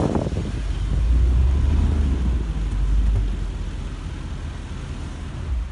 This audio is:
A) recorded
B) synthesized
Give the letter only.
A